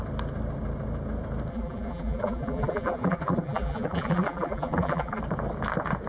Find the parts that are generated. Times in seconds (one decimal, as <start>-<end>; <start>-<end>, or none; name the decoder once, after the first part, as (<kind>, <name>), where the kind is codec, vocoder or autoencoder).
1.5-5.2 (vocoder, BigVGAN v2)